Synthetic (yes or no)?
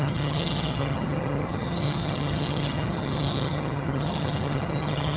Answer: yes